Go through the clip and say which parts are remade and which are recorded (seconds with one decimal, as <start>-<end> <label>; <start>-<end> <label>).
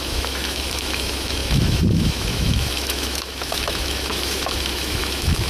0.0-5.5 remade